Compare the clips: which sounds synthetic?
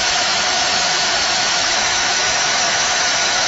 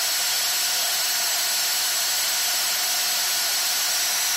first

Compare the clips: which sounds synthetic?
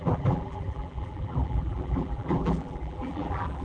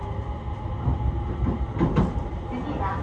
first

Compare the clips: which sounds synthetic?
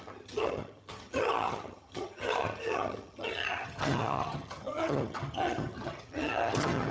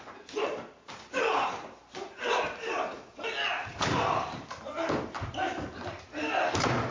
first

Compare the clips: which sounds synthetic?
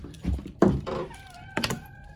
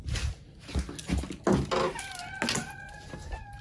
first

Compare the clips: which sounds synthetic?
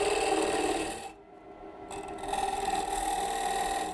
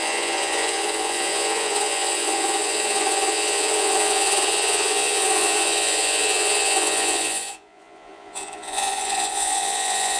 second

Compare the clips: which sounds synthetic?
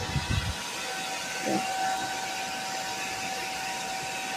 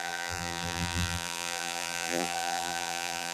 second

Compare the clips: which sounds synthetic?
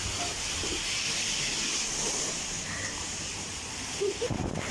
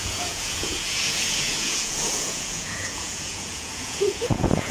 second